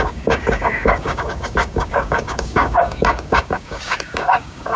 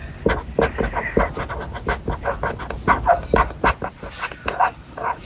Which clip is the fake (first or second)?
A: first